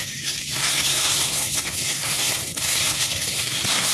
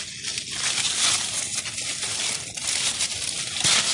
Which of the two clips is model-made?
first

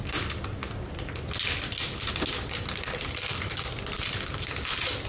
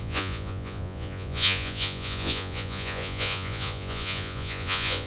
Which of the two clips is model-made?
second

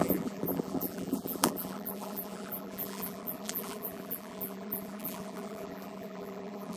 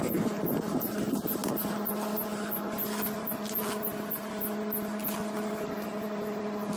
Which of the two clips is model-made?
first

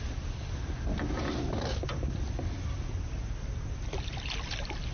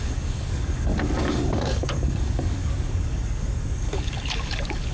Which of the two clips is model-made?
second